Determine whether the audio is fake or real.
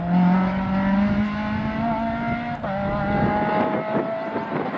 real